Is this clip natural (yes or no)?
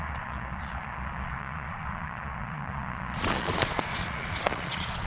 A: no